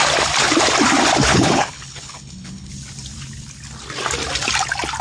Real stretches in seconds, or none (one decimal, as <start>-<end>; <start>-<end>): 0.0-1.3; 2.7-5.0